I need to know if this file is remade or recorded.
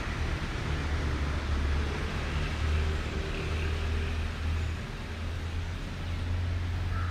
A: recorded